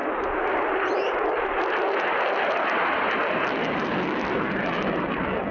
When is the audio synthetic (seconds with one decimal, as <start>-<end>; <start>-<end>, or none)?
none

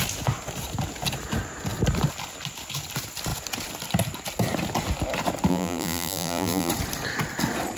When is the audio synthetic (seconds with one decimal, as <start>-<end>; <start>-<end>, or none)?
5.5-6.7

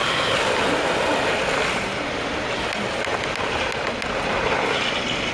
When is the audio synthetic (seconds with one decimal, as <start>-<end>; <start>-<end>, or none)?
none

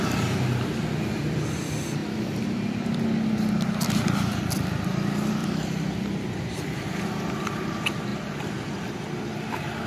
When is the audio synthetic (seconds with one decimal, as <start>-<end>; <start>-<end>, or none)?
5.4-6.9

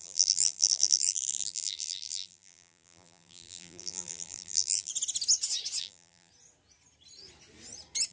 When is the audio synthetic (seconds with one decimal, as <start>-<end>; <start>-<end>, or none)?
0.0-4.9; 5.8-6.3

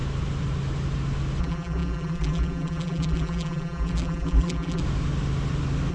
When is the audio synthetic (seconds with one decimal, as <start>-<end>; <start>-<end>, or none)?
1.4-4.8

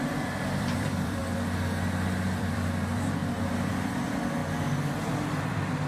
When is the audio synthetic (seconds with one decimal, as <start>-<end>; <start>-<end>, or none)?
0.0-1.2; 2.4-4.4